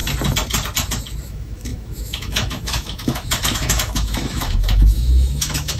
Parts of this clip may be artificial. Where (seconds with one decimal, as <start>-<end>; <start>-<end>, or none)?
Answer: 1.2-5.8